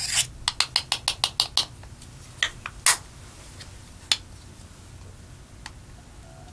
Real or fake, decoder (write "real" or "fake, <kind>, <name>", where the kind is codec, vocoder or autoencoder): real